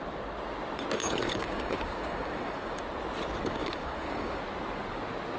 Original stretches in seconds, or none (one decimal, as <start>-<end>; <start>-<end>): 0.0-1.0; 2.8-3.6; 4.4-5.4